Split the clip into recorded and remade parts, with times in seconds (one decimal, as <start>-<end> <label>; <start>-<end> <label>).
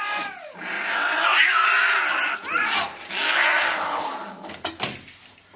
0.0-5.6 recorded